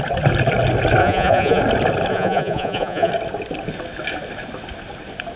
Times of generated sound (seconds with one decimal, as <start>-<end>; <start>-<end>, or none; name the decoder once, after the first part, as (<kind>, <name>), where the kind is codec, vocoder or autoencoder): 1.0-1.6 (vocoder, Vocos); 2.1-3.1